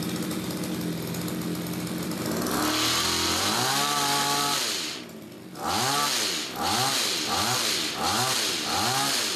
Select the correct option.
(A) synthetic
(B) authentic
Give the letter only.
B